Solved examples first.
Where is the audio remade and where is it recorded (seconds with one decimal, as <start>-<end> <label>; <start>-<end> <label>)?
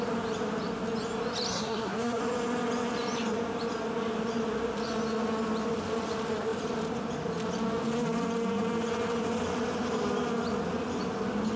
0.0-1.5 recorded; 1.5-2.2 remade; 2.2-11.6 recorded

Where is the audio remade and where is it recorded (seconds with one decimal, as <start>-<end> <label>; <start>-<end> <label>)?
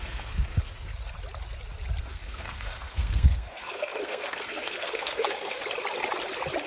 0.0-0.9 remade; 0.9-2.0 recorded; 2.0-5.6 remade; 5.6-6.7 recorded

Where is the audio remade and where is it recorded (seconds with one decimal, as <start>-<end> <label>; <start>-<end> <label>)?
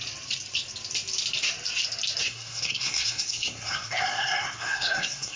0.0-2.2 recorded; 2.2-5.4 remade